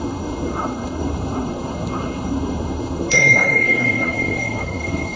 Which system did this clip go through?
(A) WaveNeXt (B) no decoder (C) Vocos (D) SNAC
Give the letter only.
D